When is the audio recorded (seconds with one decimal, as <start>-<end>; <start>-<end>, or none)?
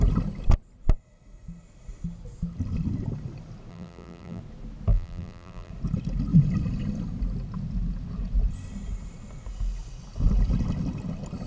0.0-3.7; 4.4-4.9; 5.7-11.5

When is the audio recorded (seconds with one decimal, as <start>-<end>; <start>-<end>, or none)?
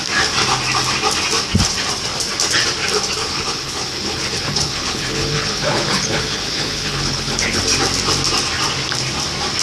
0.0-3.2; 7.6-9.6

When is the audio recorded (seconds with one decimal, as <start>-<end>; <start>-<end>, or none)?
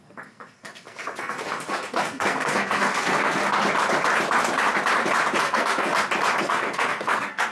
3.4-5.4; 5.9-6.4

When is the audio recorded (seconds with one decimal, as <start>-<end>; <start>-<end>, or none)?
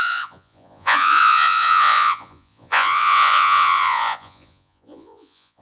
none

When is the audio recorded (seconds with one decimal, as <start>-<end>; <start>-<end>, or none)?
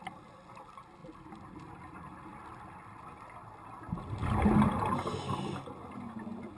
0.0-6.6